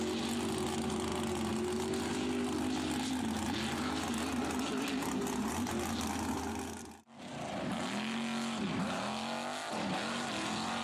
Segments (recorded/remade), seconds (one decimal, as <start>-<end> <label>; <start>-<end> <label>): 0.0-10.8 recorded